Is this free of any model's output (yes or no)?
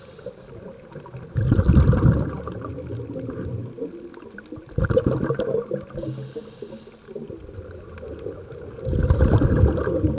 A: yes